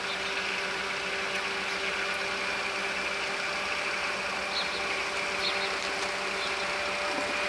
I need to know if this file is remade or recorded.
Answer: recorded